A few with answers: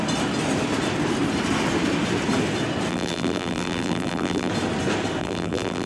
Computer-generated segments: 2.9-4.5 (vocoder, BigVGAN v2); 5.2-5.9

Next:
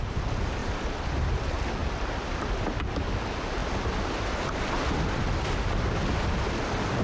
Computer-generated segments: 0.6-1.2 (vocoder, BigVGAN v2); 1.8-2.8

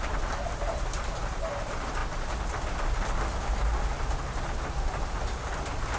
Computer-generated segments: none

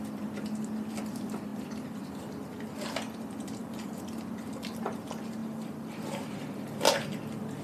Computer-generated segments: none

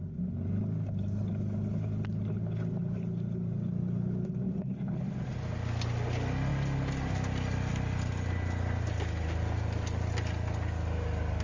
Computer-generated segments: none

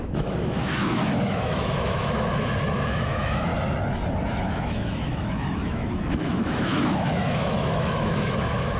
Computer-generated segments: 0.0-3.5 (autoencoder, DAC-VAE); 4.3-8.8

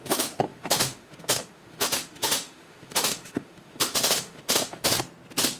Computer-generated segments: 0.0-4.9 (autoencoder, DAC-VAE)

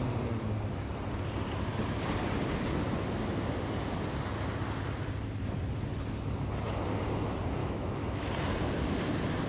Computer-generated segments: 7.6-8.3 (autoencoder, DAC-VAE)